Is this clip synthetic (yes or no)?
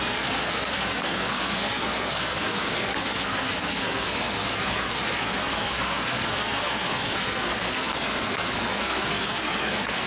yes